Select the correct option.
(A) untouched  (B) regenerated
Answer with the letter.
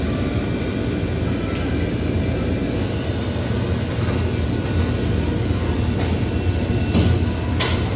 A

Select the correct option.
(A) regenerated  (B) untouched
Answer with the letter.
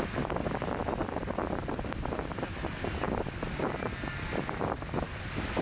B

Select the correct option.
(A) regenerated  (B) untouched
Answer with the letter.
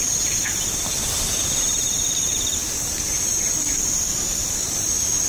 A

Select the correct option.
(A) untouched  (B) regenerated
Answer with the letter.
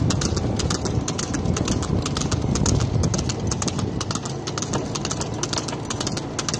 A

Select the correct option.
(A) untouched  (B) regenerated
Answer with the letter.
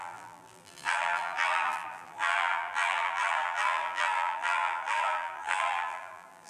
B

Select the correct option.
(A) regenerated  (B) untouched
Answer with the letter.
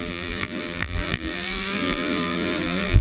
A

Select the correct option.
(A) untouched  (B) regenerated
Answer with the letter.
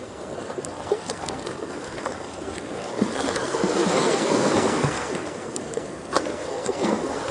B